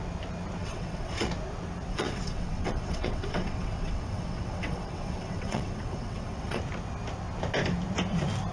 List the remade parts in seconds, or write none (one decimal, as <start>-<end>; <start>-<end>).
0.6-1.3; 1.9-6.6

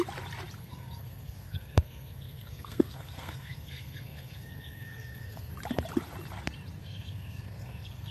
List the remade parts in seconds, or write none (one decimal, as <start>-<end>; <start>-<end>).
0.6-5.5; 6.8-8.1

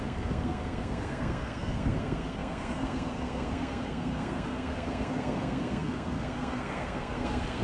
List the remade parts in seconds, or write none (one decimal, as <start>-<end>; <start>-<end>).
0.0-7.6

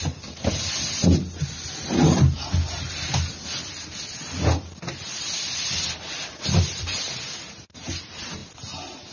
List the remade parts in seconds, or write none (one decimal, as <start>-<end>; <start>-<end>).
none

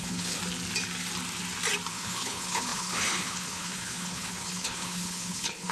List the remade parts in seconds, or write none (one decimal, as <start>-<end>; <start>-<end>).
0.0-0.4; 1.9-5.7

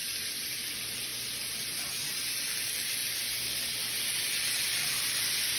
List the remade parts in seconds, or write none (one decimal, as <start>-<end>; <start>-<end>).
0.0-0.7

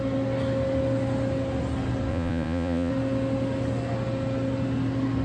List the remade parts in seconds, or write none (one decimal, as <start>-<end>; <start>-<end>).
2.1-2.9

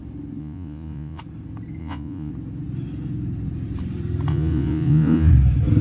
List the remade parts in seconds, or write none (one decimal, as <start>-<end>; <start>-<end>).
0.4-1.2; 1.8-2.3; 4.3-5.3